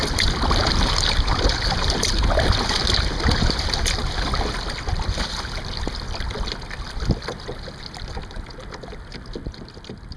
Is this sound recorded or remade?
recorded